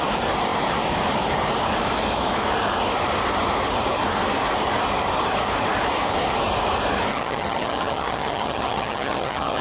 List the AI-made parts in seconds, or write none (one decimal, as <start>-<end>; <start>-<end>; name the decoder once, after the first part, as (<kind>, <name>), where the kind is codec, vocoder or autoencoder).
7.1-9.6 (vocoder, HiFi-GAN)